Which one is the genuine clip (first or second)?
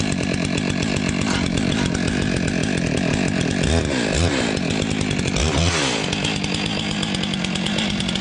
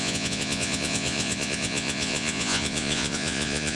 first